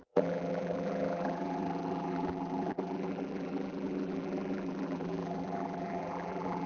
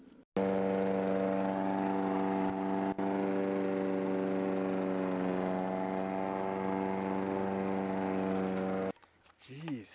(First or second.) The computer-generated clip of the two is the first